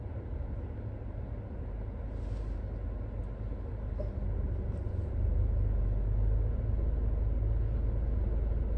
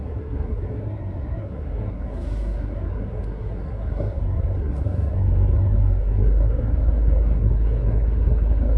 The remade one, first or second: second